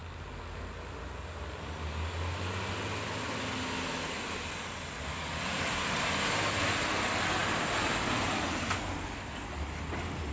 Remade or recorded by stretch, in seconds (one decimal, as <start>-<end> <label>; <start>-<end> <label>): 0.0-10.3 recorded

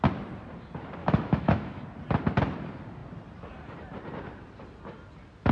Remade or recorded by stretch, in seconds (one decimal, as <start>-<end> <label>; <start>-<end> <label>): 0.0-1.0 recorded; 1.0-1.8 remade; 1.8-5.5 recorded

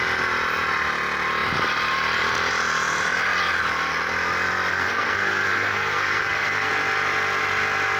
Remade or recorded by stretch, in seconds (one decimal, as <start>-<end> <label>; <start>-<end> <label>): 0.0-4.7 recorded; 4.7-6.7 remade; 6.7-8.0 recorded